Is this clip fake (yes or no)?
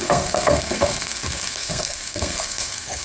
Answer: yes